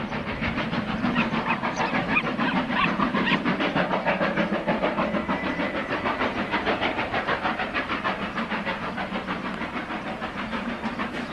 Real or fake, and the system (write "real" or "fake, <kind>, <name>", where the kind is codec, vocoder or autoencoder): fake, vocoder, BigVGAN v2